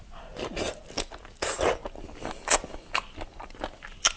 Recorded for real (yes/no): yes